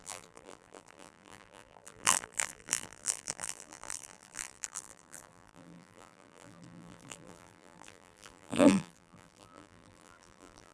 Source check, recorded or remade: remade